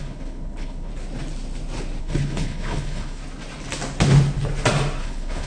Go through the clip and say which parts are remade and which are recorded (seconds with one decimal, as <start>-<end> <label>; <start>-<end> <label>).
0.0-0.9 remade; 0.9-2.0 recorded; 2.0-3.2 remade; 3.2-5.0 recorded; 5.0-5.5 remade